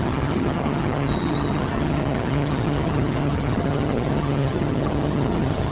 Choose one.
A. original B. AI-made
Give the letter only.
B